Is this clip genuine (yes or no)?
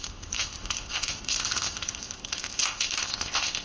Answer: no